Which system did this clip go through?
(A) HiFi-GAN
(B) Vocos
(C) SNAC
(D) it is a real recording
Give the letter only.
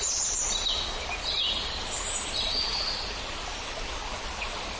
D